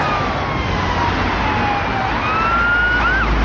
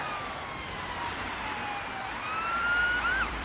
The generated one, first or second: second